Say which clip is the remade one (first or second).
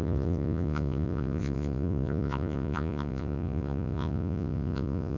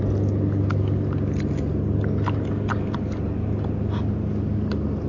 first